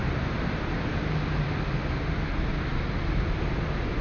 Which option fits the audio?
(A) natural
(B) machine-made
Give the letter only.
A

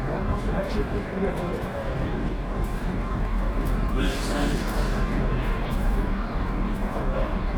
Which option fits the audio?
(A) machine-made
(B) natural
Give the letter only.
A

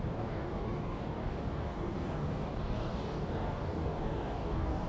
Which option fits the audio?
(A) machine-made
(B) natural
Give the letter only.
A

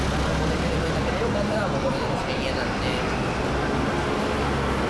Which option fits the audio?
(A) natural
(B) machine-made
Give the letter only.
A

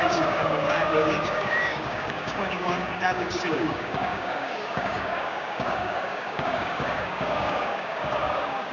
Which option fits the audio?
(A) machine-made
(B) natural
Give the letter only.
A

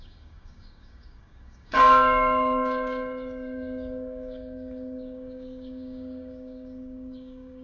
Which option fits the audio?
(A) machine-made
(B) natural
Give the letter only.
A